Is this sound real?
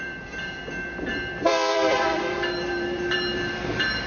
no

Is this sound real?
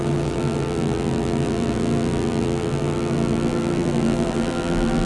no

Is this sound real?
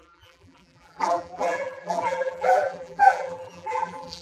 no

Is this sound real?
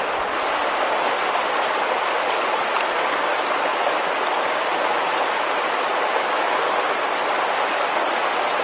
no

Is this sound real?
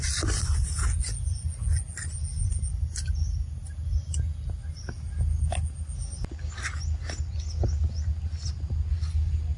yes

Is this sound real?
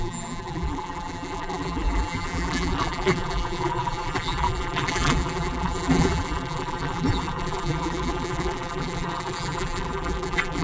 no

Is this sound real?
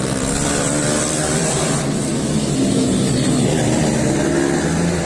no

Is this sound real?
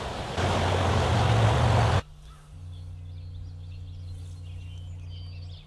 yes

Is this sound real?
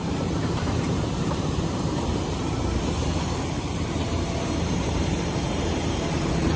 no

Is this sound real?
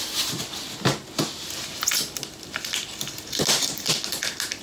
yes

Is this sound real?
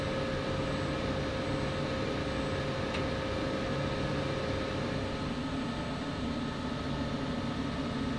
yes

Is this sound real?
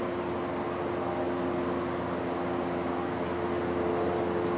yes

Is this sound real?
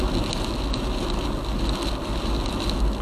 yes